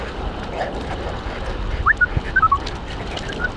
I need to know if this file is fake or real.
real